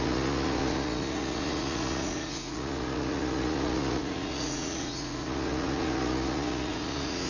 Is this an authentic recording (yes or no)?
no